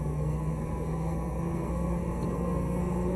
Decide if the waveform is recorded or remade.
remade